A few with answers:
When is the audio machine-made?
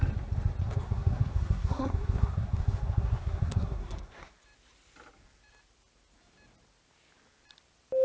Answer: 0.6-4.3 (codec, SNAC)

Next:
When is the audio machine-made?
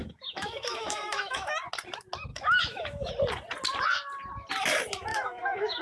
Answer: 0.0-1.6 (autoencoder, DAC-VAE); 2.3-3.1; 5.1-5.8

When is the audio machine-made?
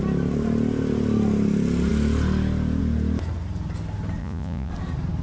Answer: 4.2-4.7 (vocoder, Vocos)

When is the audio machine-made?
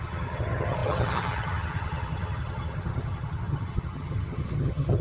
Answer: 0.0-5.0 (vocoder, HiFi-GAN)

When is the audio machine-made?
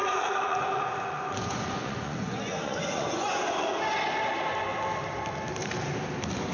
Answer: 0.0-3.9 (vocoder, Vocos)